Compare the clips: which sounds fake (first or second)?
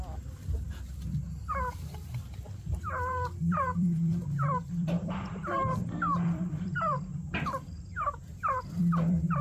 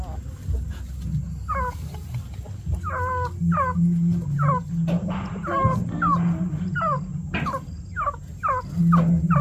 first